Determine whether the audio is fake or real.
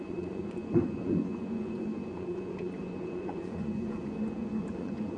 fake